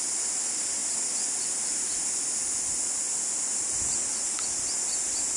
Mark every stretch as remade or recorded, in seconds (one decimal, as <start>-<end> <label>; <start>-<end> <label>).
0.0-5.4 recorded

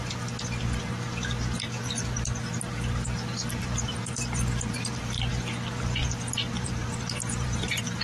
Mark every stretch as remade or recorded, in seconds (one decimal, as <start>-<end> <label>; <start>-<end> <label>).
0.0-3.6 recorded; 3.6-5.3 remade; 5.3-6.0 recorded; 6.0-8.0 remade

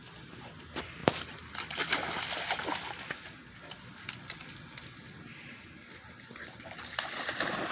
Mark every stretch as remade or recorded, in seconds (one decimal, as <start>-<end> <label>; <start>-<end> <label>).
0.0-1.0 remade; 1.0-1.5 recorded; 1.5-7.7 remade

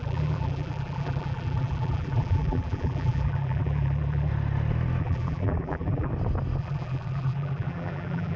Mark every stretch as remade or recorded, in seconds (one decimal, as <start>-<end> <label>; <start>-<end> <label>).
0.0-4.3 remade; 4.3-5.0 recorded; 5.0-6.1 remade; 6.1-6.6 recorded; 6.6-8.4 remade